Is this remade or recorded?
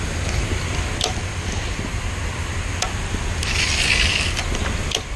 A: recorded